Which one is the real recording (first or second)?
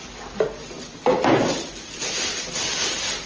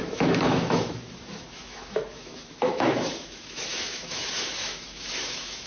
first